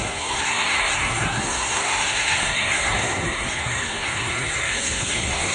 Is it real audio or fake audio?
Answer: fake